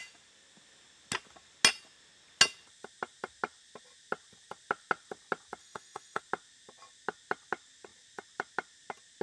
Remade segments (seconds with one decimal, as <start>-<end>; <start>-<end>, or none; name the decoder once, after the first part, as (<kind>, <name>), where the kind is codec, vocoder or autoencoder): 5.6-6.2 (autoencoder, DAC-VAE)